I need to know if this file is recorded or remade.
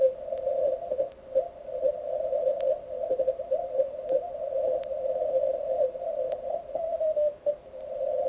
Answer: remade